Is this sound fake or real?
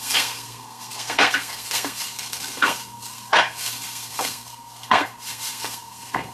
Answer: fake